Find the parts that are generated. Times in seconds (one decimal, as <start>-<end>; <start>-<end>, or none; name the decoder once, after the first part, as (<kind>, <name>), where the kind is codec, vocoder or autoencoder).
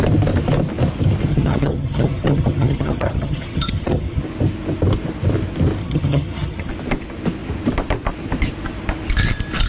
1.3-4.2 (vocoder, HiFi-GAN); 5.8-6.7